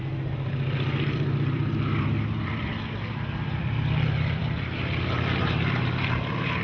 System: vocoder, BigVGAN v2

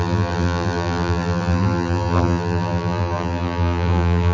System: vocoder, BigVGAN v2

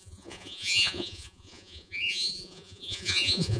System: vocoder, Vocos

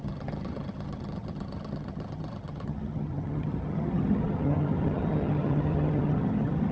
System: vocoder, HiFi-GAN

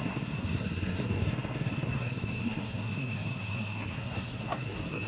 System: codec, SNAC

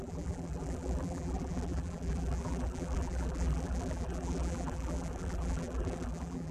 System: vocoder, BigVGAN v2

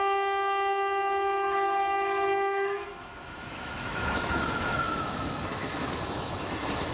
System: autoencoder, DAC-VAE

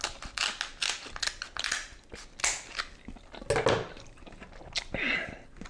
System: none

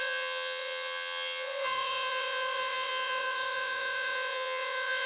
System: vocoder, WaveNeXt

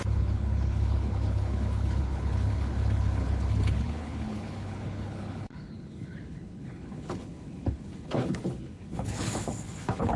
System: codec, HILCodec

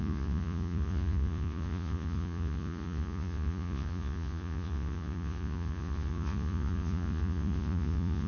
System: vocoder, Vocos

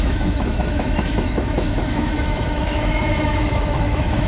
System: autoencoder, DAC-VAE